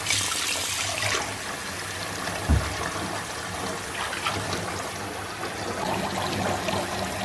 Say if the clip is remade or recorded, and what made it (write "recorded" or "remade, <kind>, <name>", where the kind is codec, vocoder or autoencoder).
recorded